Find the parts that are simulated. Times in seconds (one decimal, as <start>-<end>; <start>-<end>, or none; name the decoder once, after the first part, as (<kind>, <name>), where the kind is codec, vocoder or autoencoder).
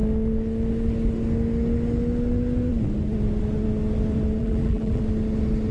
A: 4.4-5.0 (vocoder, BigVGAN v2)